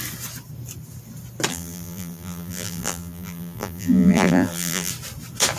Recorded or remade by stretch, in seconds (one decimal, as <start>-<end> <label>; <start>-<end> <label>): 0.0-1.5 recorded; 1.5-4.9 remade; 4.9-5.6 recorded